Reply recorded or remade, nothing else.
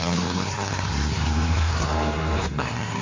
remade